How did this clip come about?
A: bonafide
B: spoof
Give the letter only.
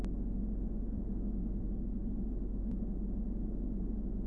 A